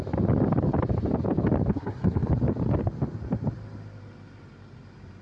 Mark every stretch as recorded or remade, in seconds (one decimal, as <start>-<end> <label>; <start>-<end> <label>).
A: 0.0-1.7 recorded; 1.7-2.3 remade; 2.3-5.2 recorded